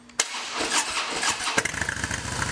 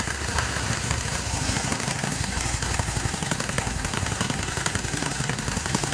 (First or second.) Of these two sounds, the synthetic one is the second